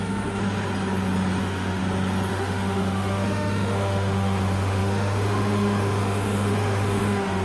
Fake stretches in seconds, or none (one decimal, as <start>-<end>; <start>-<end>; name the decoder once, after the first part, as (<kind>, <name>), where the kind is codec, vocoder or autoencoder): 0.0-0.4 (autoencoder, DAC-VAE); 1.4-1.8; 2.3-7.4